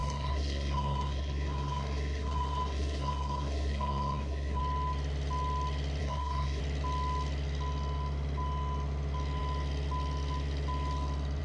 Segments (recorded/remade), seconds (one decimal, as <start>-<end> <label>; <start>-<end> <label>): 0.0-4.6 remade; 4.6-6.0 recorded; 6.0-6.6 remade; 6.6-11.4 recorded